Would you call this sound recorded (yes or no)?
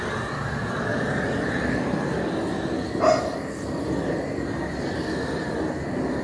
yes